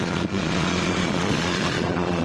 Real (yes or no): no